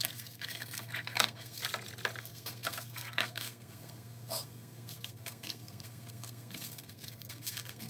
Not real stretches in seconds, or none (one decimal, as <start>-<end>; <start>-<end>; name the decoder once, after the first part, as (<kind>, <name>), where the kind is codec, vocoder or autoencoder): 0.0-1.6 (codec, SNAC); 2.2-7.9